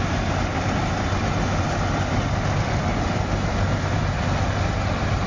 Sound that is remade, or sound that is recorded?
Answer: recorded